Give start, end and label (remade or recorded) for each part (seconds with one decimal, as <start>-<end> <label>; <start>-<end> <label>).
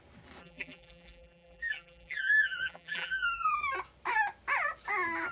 0.0-0.4 recorded; 0.4-3.6 remade; 3.6-5.3 recorded